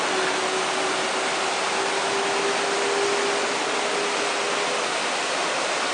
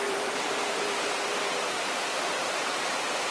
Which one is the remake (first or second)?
second